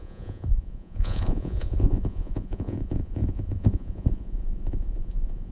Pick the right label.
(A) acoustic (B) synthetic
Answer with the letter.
B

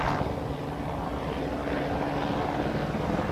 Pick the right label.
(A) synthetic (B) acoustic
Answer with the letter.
B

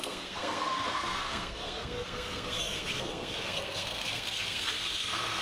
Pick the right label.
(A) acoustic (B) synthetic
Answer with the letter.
B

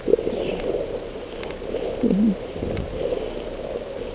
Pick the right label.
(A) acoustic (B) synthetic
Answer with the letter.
A